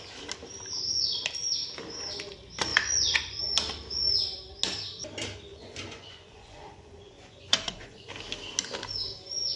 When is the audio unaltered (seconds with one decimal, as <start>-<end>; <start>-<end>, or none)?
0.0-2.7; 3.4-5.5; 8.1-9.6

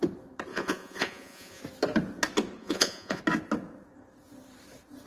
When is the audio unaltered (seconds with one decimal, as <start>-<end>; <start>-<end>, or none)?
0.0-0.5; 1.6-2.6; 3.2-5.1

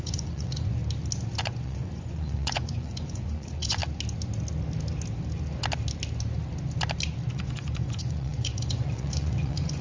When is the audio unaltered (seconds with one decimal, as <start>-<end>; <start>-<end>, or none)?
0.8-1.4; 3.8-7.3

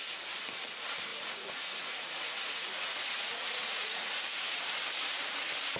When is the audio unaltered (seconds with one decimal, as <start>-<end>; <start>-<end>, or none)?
0.0-1.1; 4.6-5.8

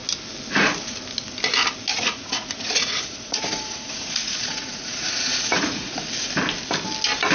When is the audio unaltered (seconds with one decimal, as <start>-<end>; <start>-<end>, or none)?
0.0-1.9; 6.0-7.3

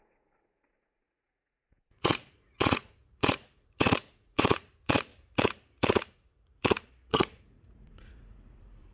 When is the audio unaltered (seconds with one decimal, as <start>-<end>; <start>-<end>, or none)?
5.1-6.1; 6.6-7.1

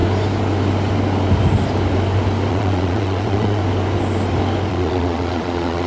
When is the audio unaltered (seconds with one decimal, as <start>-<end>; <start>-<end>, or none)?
0.0-2.5; 3.6-4.7